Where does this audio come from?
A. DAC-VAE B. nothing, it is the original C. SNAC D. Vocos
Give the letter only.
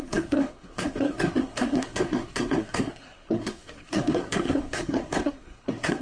C